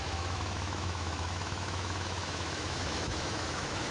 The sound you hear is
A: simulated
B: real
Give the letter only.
A